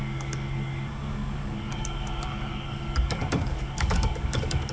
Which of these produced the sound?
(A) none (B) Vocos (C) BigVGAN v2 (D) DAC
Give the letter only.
D